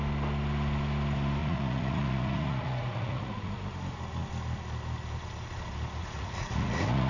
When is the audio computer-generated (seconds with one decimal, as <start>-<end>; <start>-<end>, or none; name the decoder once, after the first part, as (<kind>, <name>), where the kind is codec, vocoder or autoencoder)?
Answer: 1.4-3.5 (vocoder, Vocos); 6.0-7.1